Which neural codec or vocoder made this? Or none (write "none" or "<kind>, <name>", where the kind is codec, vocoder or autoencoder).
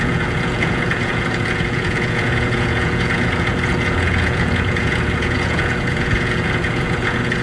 vocoder, Vocos